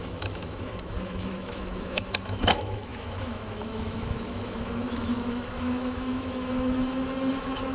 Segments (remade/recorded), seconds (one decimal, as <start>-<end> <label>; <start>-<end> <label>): 0.0-7.7 remade